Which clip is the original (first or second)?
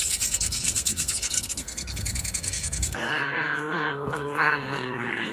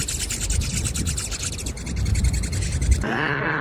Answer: second